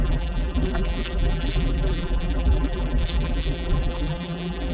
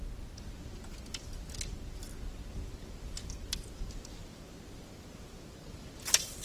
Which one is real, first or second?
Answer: second